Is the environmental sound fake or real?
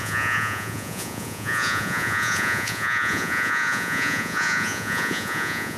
fake